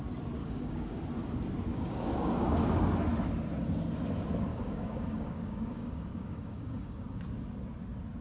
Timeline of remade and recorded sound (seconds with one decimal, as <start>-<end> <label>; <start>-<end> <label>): 0.0-0.4 recorded; 0.4-1.0 remade; 1.0-1.7 recorded; 1.7-2.8 remade; 2.8-4.5 recorded; 4.5-7.2 remade; 7.2-8.2 recorded